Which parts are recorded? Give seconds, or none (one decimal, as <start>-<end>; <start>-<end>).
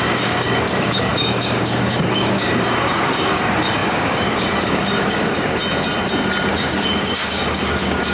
5.6-6.5